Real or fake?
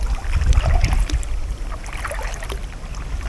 real